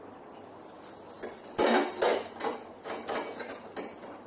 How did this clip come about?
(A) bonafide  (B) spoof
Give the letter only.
A